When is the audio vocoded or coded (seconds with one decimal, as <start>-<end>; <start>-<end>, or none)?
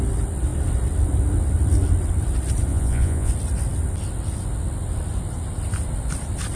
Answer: 2.7-3.3